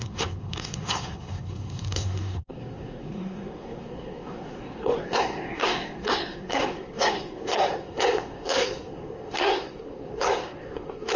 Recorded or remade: remade